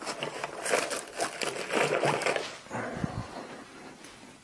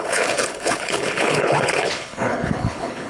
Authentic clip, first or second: first